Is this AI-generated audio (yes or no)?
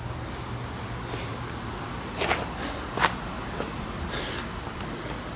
no